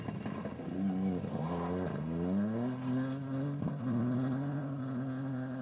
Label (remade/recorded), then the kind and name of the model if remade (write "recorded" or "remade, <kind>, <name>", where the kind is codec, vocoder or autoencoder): recorded